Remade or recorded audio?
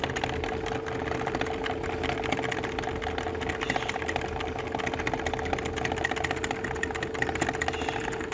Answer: recorded